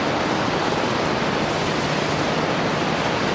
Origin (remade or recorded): recorded